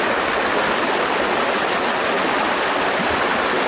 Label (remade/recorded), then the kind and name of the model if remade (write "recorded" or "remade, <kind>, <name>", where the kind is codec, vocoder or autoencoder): recorded